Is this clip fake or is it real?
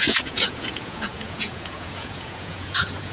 fake